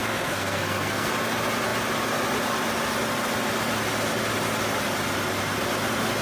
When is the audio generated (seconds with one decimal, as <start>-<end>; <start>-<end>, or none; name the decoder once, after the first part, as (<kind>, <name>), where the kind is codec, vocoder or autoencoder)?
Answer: 0.0-1.1 (codec, SNAC)